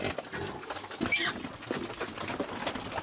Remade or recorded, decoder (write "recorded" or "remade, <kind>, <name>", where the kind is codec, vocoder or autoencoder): recorded